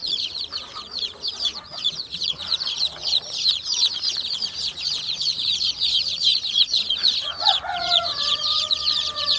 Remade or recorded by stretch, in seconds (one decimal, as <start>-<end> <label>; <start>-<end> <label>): 0.0-9.4 remade